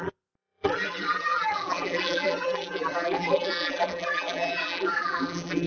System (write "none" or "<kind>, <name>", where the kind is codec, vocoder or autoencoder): vocoder, BigVGAN v2